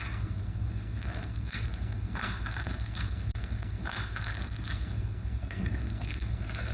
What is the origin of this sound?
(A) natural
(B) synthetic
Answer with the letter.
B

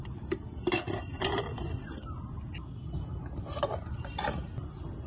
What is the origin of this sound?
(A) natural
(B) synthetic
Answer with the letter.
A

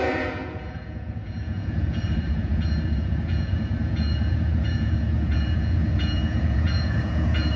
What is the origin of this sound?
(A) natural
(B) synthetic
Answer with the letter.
B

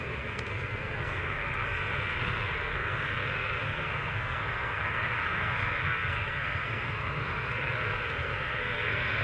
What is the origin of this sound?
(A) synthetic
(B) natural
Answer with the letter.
A